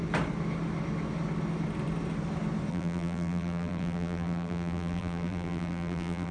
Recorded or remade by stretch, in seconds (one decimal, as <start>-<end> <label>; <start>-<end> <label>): 0.0-2.7 recorded; 2.7-6.3 remade